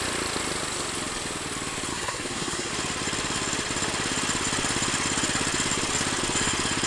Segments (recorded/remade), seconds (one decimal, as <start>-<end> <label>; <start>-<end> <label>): 0.0-1.9 recorded; 1.9-2.7 remade; 2.7-6.9 recorded

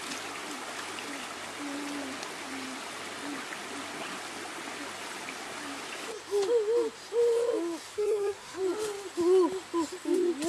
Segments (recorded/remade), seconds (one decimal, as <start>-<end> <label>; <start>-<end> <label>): 0.0-7.9 recorded; 7.9-8.6 remade; 8.6-10.5 recorded